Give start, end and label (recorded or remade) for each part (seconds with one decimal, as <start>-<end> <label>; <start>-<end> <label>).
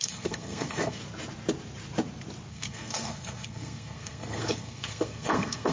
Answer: 0.0-1.0 remade; 1.0-2.5 recorded; 2.5-5.7 remade